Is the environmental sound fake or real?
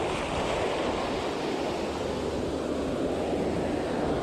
real